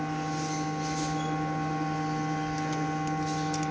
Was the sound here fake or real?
real